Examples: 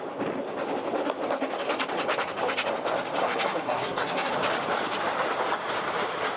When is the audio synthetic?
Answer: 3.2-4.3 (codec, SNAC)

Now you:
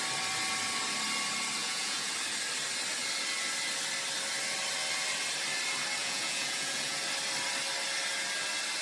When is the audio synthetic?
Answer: 1.6-2.1 (vocoder, Vocos); 6.0-7.0

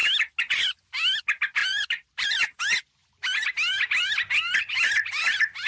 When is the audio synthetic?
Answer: 1.6-2.4 (vocoder, BigVGAN v2)

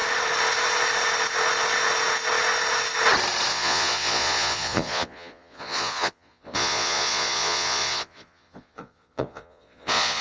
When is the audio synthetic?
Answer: 3.5-10.2 (vocoder, Vocos)